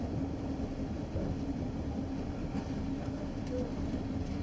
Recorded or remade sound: recorded